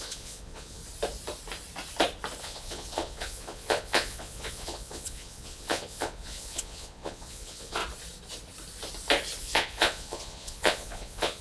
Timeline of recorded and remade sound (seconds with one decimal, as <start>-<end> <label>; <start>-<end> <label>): 0.0-0.8 remade; 0.8-2.4 recorded; 2.4-7.8 remade; 7.8-9.4 recorded; 9.4-11.4 remade